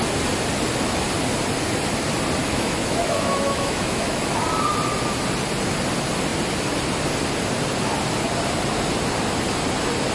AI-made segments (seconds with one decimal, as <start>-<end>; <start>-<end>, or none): 2.4-4.3